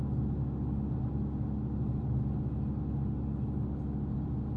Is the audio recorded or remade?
recorded